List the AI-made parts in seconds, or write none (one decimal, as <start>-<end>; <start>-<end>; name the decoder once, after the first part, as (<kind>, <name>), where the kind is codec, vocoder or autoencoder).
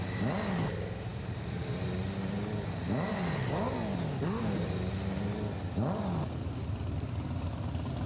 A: none